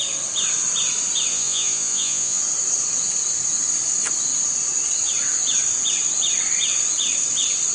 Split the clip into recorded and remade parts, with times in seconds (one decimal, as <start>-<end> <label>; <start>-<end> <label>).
0.0-1.3 recorded; 1.3-2.4 remade; 2.4-7.7 recorded